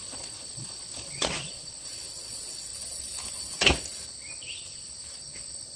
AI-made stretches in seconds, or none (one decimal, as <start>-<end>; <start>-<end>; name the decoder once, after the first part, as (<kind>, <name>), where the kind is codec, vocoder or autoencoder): 0.0-2.7 (vocoder, Vocos)